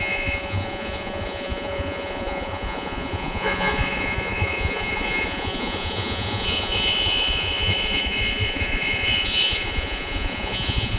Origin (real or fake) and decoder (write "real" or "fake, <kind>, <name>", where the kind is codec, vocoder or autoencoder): fake, vocoder, Vocos